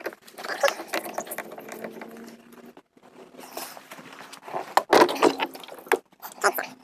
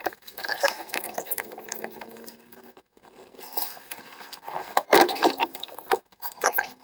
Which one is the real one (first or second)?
first